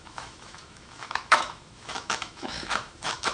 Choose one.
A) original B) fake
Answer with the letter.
B